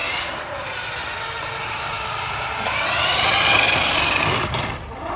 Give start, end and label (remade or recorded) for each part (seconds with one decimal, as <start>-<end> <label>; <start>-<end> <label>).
0.0-0.7 remade; 0.7-1.6 recorded; 1.6-4.7 remade; 4.7-5.2 recorded